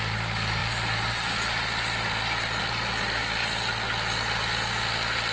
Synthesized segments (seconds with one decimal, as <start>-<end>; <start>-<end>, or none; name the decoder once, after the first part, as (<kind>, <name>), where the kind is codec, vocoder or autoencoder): none